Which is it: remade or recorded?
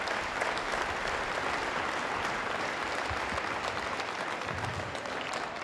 recorded